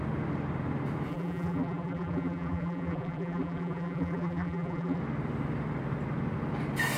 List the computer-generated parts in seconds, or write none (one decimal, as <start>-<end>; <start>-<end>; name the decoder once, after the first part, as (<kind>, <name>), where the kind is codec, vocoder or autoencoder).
1.1-5.0 (vocoder, BigVGAN v2)